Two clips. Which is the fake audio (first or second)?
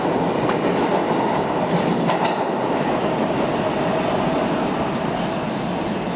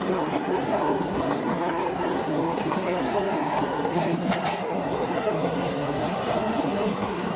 second